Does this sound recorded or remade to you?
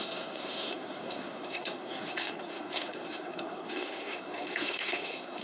remade